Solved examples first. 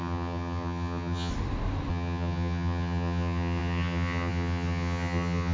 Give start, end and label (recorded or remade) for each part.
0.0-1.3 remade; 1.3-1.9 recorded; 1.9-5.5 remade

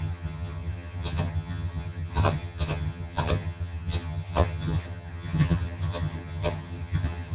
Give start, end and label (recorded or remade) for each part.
0.0-7.3 remade

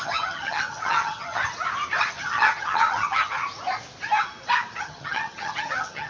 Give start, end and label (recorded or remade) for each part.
0.0-1.4 remade; 1.4-2.0 recorded; 2.0-3.4 remade; 3.4-4.8 recorded; 4.8-6.1 remade

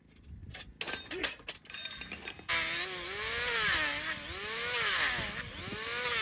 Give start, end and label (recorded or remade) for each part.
0.0-6.2 recorded

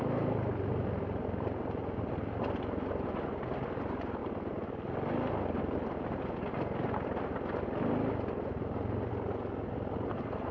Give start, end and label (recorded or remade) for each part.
0.0-10.5 recorded